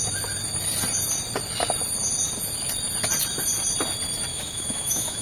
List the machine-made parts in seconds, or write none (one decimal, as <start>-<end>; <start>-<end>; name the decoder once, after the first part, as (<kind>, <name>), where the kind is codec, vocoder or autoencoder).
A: 4.3-5.2 (autoencoder, DAC-VAE)

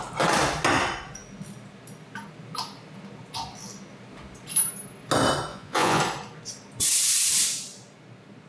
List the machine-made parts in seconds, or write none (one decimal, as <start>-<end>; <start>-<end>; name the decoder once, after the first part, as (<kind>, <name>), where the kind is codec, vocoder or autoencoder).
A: 5.5-6.0 (vocoder, Vocos)